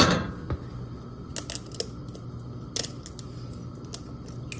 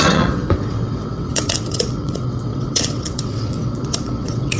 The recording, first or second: first